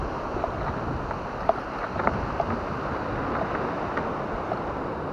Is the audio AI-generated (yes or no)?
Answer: no